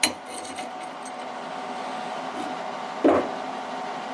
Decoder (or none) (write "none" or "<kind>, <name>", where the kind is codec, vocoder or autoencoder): none